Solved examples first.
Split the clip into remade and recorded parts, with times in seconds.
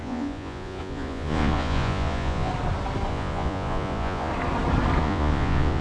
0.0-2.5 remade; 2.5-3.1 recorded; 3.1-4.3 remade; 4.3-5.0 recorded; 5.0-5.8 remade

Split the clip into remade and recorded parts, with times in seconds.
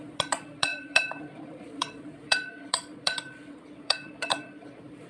0.0-5.1 remade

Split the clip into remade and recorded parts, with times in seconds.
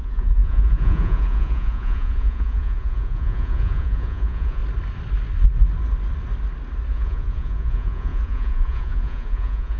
0.0-4.6 remade; 4.6-6.9 recorded; 6.9-9.8 remade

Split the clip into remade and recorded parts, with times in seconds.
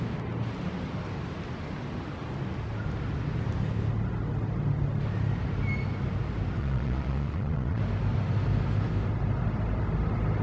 0.0-6.6 recorded; 6.6-7.8 remade; 7.8-10.4 recorded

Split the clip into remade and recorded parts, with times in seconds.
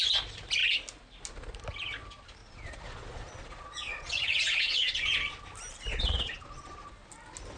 0.0-2.4 recorded; 2.4-5.4 remade; 5.4-5.9 recorded; 5.9-6.9 remade; 6.9-7.6 recorded